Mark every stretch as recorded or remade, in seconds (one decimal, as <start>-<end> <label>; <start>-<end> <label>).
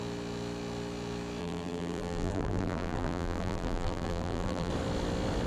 0.0-1.4 recorded; 1.4-4.7 remade; 4.7-5.5 recorded